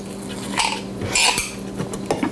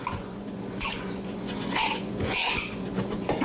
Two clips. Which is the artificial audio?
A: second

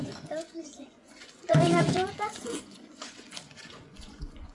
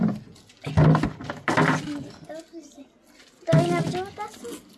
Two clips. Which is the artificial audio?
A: first